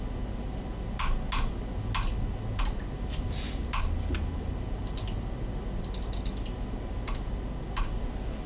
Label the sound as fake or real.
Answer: real